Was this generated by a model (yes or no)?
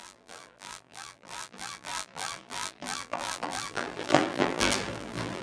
yes